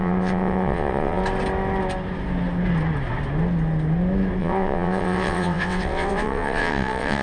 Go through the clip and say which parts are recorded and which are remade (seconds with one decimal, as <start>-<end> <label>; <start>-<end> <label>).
0.0-1.2 remade; 1.2-4.4 recorded; 4.4-7.2 remade